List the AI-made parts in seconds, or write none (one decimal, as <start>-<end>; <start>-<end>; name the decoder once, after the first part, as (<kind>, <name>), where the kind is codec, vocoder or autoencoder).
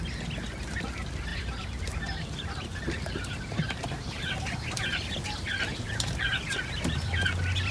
1.3-4.3 (vocoder, BigVGAN v2); 5.7-6.8